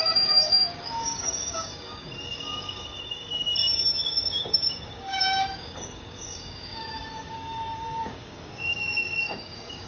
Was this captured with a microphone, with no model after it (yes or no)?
no